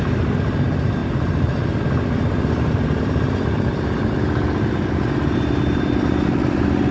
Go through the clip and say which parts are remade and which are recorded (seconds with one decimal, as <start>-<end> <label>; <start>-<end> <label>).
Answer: 0.0-6.9 recorded